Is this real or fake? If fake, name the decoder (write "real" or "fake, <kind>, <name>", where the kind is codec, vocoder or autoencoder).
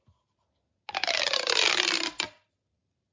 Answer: real